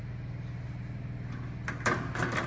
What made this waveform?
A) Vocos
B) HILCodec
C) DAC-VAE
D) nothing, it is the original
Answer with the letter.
D